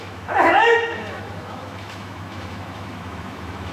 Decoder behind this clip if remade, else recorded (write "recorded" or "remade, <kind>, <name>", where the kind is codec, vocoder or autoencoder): remade, autoencoder, DAC-VAE